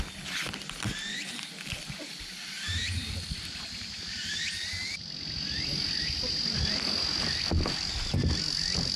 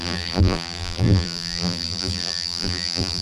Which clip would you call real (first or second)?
first